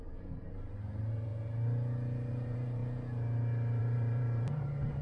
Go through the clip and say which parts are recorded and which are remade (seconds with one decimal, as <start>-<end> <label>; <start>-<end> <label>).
0.0-1.3 remade; 1.3-2.3 recorded; 2.3-2.8 remade; 2.8-3.8 recorded; 3.8-5.0 remade